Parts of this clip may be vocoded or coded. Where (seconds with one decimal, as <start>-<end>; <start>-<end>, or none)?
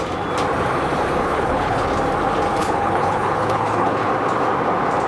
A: 1.2-1.9; 2.6-4.1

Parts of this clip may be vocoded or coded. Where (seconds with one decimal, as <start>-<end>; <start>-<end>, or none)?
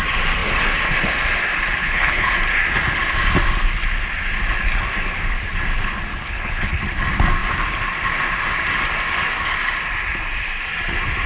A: 1.8-2.3; 6.1-6.7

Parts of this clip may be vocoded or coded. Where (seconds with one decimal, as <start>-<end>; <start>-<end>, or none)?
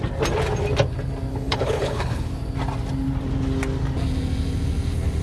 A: 1.3-2.3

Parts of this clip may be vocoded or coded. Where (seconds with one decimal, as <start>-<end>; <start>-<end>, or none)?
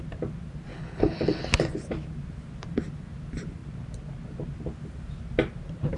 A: 0.7-1.4